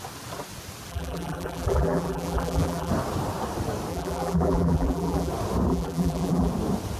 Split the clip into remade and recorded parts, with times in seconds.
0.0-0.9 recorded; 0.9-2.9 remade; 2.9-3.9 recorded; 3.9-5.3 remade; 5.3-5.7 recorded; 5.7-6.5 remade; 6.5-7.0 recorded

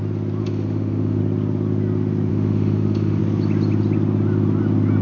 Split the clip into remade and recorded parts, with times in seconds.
0.0-0.4 recorded; 0.4-1.2 remade; 1.2-2.3 recorded; 2.3-3.2 remade; 3.2-5.0 recorded

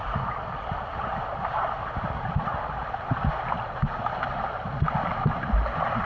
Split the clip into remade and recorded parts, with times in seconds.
0.0-0.9 recorded; 0.9-1.6 remade; 1.6-2.5 recorded; 2.5-3.2 remade; 3.2-6.1 recorded

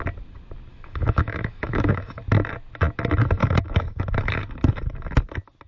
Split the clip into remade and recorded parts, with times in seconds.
0.0-0.7 recorded; 0.7-2.2 remade; 2.2-3.4 recorded; 3.4-4.4 remade; 4.4-5.7 recorded

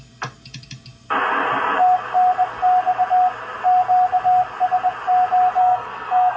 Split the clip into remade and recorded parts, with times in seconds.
0.0-5.6 recorded; 5.6-6.4 remade

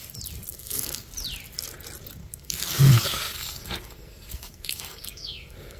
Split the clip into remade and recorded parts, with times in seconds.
0.0-0.5 recorded; 0.5-1.1 remade; 1.1-2.2 recorded; 2.2-5.8 remade

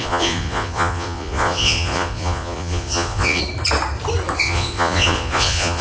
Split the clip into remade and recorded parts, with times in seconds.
0.0-3.4 remade; 3.4-4.4 recorded; 4.4-5.8 remade

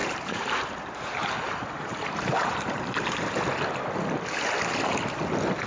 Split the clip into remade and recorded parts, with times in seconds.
0.0-3.4 remade; 3.4-5.7 recorded